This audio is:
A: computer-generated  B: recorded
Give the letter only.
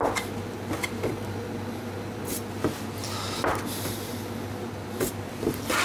B